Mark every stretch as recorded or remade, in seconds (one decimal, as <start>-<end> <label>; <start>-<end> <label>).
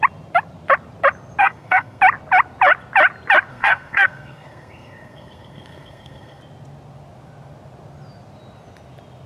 0.0-1.4 recorded; 1.4-2.0 remade; 2.0-3.5 recorded; 3.5-6.4 remade; 6.4-9.3 recorded